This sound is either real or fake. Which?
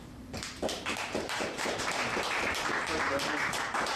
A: fake